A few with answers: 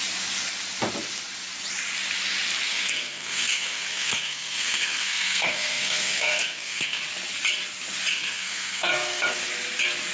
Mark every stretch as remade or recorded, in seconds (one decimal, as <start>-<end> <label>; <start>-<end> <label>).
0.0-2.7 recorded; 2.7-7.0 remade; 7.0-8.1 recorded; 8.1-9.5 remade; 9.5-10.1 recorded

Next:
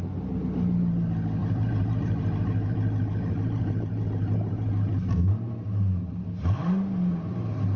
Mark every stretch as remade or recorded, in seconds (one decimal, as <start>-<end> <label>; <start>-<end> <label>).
0.0-1.4 recorded; 1.4-5.3 remade; 5.3-7.8 recorded

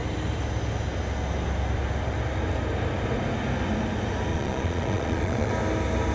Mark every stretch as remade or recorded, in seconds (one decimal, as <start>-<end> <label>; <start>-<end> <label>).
0.0-4.3 recorded; 4.3-5.5 remade; 5.5-6.1 recorded